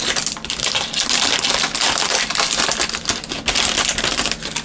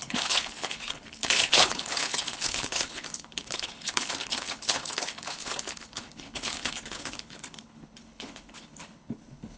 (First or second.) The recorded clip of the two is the first